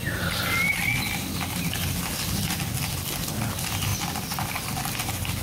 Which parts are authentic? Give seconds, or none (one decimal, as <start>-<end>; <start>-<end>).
0.0-5.4